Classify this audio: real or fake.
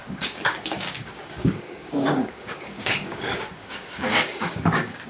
fake